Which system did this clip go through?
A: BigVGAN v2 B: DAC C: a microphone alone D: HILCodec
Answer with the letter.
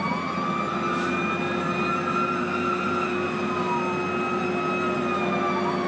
C